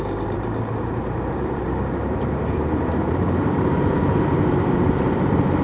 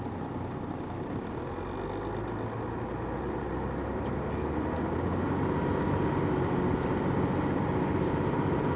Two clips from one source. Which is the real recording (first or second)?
second